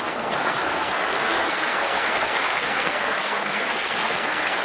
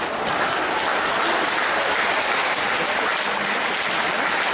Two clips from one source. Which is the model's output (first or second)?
first